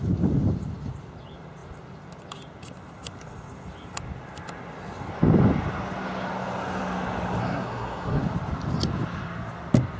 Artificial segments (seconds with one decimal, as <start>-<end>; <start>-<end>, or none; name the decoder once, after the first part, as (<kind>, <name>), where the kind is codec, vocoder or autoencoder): 7.4-8.2 (codec, SNAC)

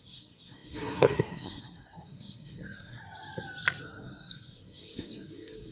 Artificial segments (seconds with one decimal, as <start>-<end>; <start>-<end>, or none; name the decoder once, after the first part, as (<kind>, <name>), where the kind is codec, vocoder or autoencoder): 0.0-3.0 (codec, SNAC); 3.8-5.7

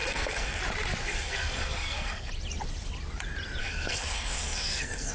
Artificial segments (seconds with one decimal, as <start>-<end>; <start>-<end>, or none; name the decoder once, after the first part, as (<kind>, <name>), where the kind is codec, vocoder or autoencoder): 0.0-0.6 (codec, SNAC); 1.0-2.3; 3.6-5.1

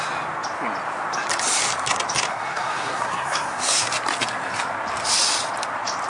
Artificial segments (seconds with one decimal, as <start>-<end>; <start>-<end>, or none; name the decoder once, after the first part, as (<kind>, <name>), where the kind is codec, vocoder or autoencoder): 2.3-3.9 (codec, SNAC)

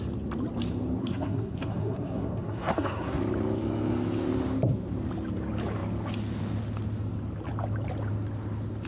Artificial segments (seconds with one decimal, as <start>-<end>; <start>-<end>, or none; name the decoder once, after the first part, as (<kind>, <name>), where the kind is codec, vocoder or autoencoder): 1.0-3.2 (codec, SNAC)

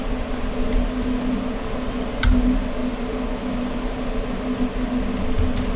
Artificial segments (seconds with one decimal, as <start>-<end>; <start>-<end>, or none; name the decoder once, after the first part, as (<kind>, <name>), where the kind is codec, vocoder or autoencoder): 2.8-3.3 (vocoder, BigVGAN v2)

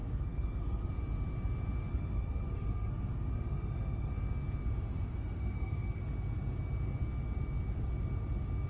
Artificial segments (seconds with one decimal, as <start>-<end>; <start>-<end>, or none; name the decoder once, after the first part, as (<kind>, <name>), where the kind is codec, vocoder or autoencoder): 0.0-0.9 (codec, SNAC); 1.9-4.1; 4.9-6.0